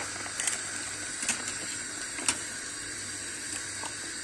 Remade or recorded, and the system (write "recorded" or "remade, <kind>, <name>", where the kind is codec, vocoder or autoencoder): recorded